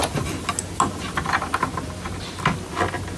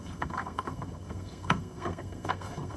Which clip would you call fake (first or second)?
second